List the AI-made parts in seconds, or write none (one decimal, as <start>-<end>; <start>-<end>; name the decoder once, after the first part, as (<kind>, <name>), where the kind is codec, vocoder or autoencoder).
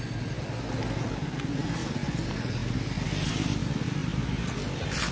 none